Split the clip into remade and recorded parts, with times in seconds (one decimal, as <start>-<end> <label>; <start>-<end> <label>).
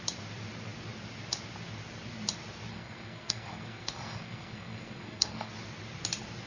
0.0-2.7 recorded; 2.7-5.5 remade; 5.5-6.5 recorded